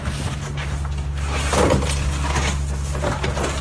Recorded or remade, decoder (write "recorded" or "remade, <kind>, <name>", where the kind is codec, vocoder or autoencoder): recorded